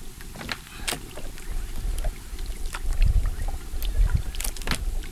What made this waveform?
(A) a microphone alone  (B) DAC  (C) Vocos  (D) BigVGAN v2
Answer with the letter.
A